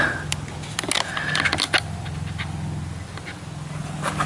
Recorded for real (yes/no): yes